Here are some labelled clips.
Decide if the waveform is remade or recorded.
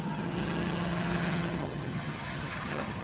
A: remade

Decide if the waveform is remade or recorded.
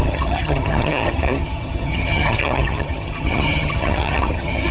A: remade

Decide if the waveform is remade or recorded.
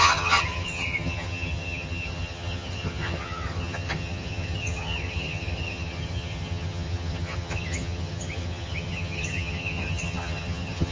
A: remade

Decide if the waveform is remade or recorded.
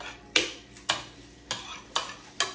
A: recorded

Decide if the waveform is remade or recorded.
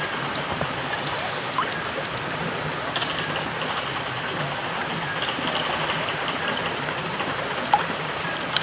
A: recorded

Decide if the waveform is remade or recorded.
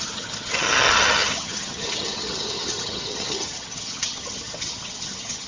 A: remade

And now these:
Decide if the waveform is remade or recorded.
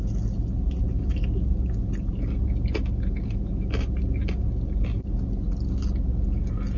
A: recorded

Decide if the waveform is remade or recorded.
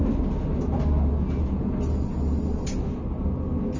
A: recorded